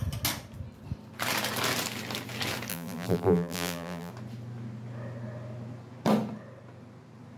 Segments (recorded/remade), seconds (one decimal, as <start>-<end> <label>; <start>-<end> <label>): 0.0-2.7 recorded; 2.7-4.1 remade; 4.1-7.4 recorded